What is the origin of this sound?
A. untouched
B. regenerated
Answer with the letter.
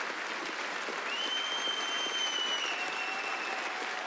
A